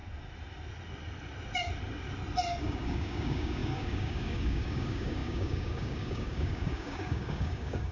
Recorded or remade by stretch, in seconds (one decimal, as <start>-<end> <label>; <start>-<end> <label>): 0.0-2.6 recorded; 2.6-7.9 remade